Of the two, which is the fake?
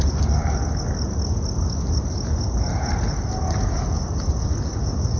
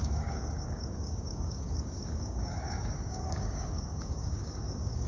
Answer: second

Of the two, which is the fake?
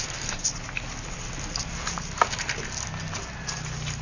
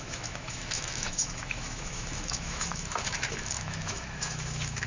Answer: second